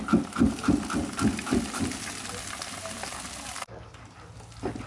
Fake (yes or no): no